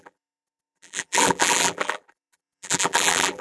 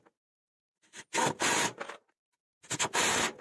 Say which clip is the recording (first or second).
second